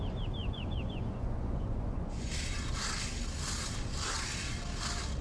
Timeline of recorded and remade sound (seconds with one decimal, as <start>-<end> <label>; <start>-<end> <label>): 0.0-0.4 recorded; 0.4-2.3 remade; 2.3-5.2 recorded

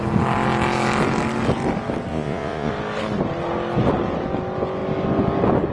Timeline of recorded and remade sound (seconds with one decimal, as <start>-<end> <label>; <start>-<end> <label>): 0.0-2.1 recorded; 2.1-2.7 remade; 2.7-5.7 recorded

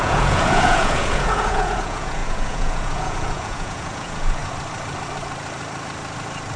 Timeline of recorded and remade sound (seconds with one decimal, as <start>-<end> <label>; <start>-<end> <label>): 0.0-4.4 remade; 4.4-6.6 recorded

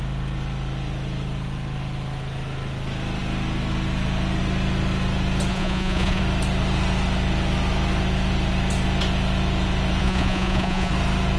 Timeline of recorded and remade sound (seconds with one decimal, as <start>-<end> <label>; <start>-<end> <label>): 0.0-5.5 recorded; 5.5-6.2 remade; 6.2-10.0 recorded; 10.0-10.9 remade; 10.9-11.4 recorded

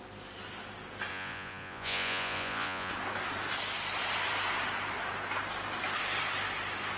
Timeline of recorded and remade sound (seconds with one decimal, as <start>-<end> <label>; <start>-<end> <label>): 0.0-1.1 recorded; 1.1-2.9 remade; 2.9-7.0 recorded

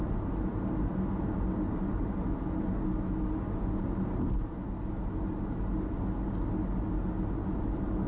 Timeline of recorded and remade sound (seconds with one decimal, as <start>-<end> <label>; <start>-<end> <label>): 0.0-8.1 recorded